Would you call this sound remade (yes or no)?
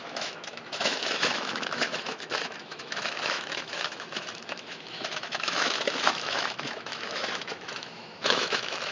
yes